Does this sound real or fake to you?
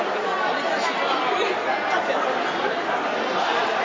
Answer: real